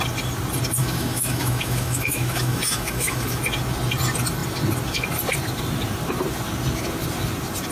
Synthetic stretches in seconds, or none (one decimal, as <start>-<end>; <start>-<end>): 0.8-3.4